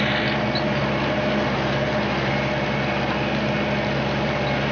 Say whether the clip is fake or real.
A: real